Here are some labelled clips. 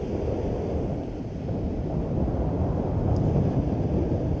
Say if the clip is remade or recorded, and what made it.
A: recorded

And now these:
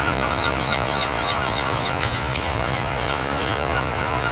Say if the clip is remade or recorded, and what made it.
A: remade, vocoder, Vocos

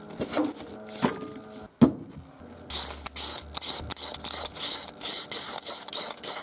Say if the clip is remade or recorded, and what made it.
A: recorded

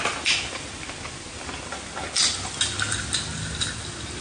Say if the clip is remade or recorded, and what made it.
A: recorded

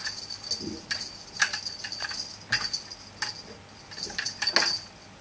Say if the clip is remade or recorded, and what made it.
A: recorded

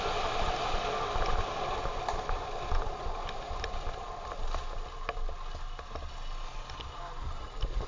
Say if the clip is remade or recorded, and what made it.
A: recorded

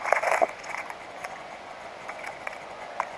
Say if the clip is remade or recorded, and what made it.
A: remade, vocoder, Vocos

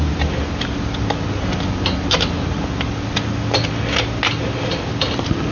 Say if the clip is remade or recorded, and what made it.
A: recorded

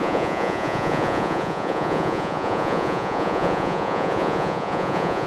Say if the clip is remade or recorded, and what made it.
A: remade, vocoder, Vocos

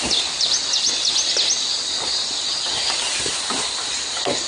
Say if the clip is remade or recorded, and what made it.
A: recorded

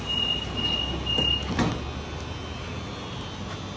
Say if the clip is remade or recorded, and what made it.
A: recorded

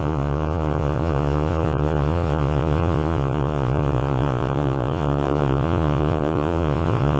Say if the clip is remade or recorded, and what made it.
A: remade, vocoder, Vocos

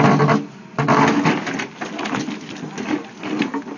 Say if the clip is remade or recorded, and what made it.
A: recorded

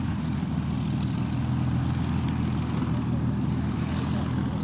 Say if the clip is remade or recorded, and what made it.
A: recorded